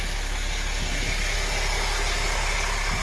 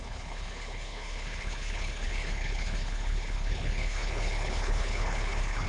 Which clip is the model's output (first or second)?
second